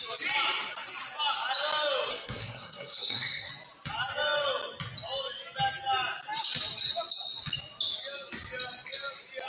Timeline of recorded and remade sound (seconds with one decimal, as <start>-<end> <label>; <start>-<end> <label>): 0.0-2.1 recorded; 2.1-3.5 remade; 3.5-9.5 recorded